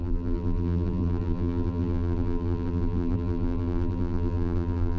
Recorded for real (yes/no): no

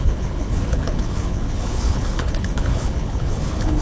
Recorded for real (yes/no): no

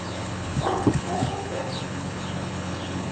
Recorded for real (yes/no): no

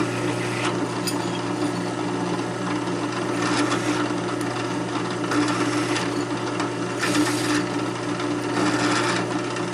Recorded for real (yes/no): yes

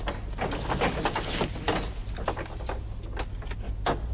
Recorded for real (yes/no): yes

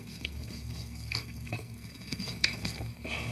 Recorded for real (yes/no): no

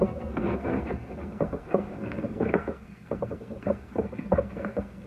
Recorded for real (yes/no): no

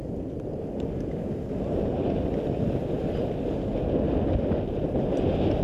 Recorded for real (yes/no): yes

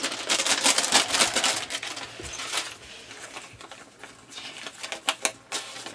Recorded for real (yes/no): yes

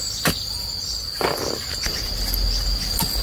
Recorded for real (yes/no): yes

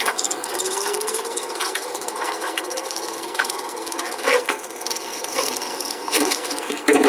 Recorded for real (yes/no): no